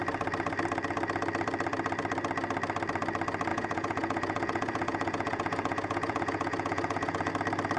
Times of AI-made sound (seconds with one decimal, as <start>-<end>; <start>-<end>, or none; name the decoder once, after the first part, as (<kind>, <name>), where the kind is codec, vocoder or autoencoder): 3.5-7.3 (vocoder, Vocos)